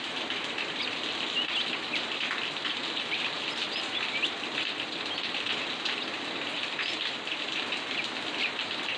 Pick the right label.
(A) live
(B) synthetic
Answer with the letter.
A